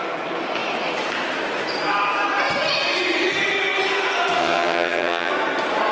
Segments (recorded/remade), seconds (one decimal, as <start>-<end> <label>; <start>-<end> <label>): 0.0-4.4 recorded; 4.4-5.3 remade; 5.3-5.9 recorded

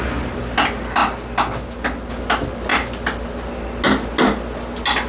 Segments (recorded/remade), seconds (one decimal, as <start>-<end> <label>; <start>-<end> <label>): 0.0-5.1 recorded